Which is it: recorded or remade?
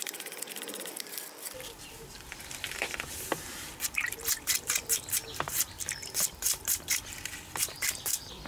remade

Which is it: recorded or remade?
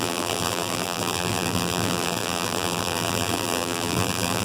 remade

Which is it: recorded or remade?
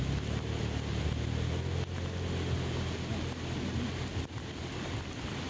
recorded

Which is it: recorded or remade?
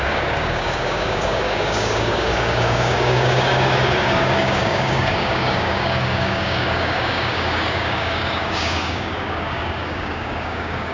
remade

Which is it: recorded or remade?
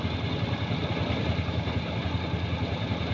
recorded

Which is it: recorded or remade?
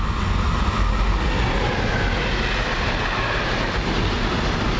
recorded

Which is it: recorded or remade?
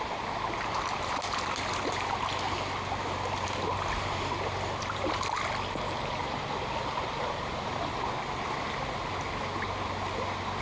recorded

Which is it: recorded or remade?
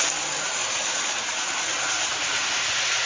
remade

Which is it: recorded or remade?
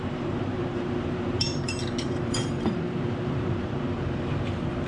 remade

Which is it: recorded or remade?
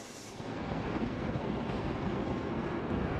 remade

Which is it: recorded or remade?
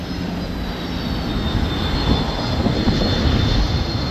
recorded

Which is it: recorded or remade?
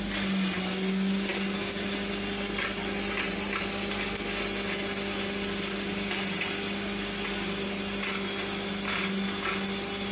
recorded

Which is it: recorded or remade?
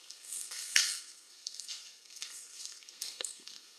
remade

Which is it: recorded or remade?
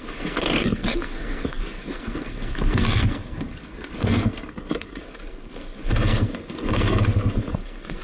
remade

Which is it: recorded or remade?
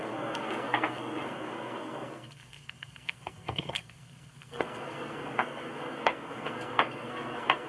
remade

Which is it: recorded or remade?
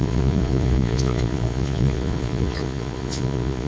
remade